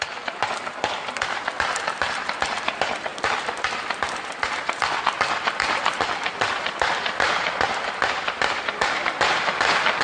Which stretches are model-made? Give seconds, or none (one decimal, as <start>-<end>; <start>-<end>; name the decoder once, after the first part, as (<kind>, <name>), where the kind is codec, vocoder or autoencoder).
none